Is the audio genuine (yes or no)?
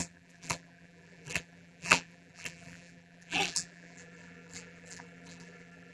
no